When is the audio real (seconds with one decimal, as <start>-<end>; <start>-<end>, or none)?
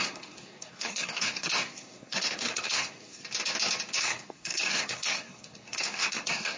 3.2-4.0